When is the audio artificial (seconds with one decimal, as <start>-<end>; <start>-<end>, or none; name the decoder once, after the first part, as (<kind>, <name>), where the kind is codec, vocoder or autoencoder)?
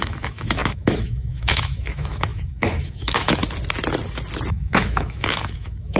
0.0-3.4 (autoencoder, DAC-VAE); 4.5-6.0